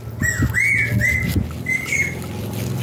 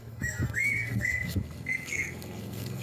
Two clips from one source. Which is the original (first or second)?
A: first